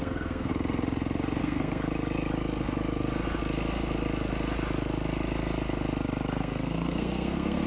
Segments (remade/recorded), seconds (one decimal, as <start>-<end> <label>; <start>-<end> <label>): 0.0-0.5 remade; 0.5-1.4 recorded; 1.4-1.8 remade; 1.8-6.4 recorded; 6.4-7.7 remade